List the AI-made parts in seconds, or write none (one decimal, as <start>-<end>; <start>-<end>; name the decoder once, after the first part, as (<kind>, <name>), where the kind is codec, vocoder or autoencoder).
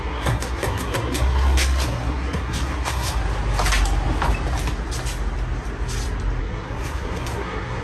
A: 0.0-3.2 (codec, SNAC); 6.4-7.8